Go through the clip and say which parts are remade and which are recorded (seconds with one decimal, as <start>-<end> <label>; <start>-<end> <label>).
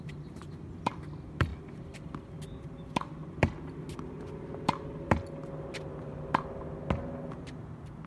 0.0-8.1 recorded